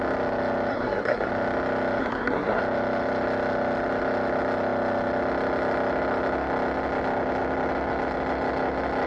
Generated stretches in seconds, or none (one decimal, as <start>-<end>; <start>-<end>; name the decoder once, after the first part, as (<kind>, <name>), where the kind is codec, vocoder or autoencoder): 0.7-1.3 (codec, SNAC); 2.0-2.6